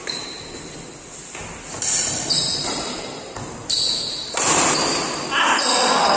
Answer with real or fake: real